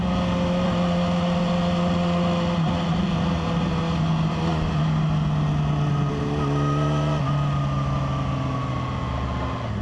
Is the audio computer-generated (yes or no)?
no